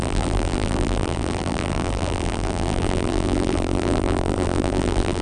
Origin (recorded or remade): remade